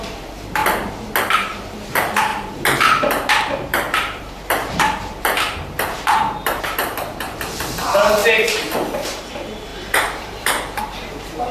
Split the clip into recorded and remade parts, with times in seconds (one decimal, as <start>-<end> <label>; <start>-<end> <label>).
0.0-0.6 remade; 0.6-1.3 recorded; 1.3-11.5 remade